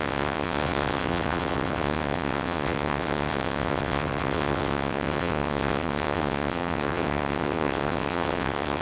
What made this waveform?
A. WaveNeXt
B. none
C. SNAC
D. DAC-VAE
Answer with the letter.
A